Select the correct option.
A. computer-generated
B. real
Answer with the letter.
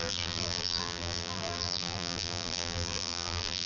A